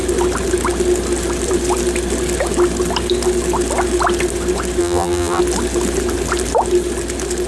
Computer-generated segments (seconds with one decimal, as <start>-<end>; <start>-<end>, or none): 4.8-5.4